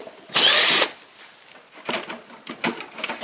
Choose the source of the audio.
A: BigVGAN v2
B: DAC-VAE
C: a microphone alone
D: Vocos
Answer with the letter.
C